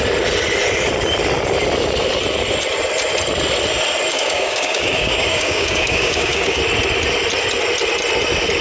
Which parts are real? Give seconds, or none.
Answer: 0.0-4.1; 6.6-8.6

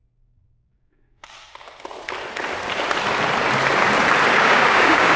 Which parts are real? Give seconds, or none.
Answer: 1.2-4.3

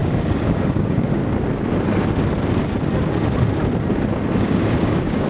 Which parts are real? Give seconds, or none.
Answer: 1.2-4.4

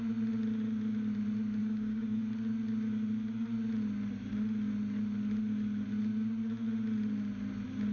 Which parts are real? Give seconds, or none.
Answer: 0.0-1.6; 2.2-7.9

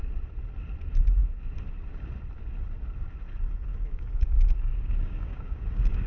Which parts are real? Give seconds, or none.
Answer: 0.0-3.7

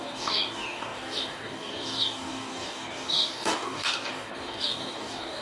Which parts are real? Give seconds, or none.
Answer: none

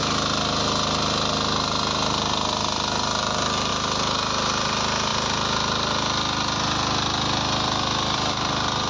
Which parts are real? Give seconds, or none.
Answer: 0.0-8.9

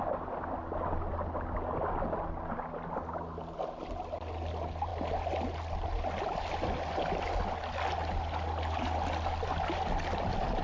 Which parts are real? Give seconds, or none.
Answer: 0.0-10.6